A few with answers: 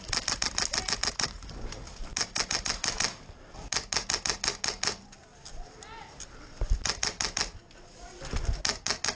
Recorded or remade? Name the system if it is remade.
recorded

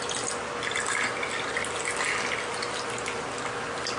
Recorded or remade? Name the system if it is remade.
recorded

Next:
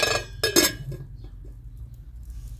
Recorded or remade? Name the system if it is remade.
recorded